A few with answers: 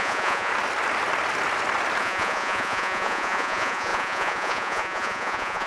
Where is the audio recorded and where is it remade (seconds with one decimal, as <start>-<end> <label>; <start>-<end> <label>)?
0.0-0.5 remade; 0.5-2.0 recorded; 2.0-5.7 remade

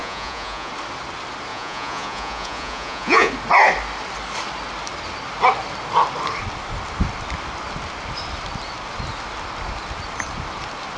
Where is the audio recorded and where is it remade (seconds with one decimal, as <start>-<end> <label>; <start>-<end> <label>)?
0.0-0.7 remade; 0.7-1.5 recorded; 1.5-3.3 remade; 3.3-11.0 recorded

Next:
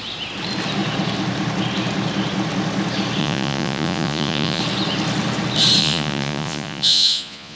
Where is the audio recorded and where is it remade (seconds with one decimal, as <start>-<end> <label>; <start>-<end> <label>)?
0.0-3.2 recorded; 3.2-4.6 remade; 4.6-5.8 recorded; 5.8-7.6 remade

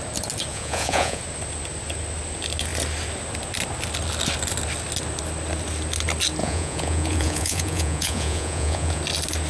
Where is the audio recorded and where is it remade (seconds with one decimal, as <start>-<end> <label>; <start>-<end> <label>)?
0.0-0.5 recorded; 0.5-1.2 remade; 1.2-6.4 recorded; 6.4-9.0 remade; 9.0-9.5 recorded

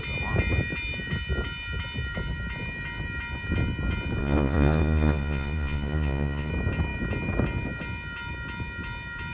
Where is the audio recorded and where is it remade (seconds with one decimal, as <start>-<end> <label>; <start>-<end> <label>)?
0.0-4.2 recorded; 4.2-6.5 remade; 6.5-9.3 recorded

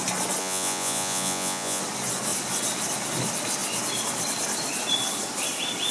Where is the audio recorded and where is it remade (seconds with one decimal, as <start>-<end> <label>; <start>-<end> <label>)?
0.0-0.4 recorded; 0.4-1.8 remade; 1.8-5.9 recorded